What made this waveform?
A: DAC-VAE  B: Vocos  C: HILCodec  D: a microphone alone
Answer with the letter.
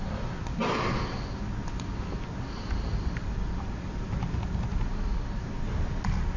D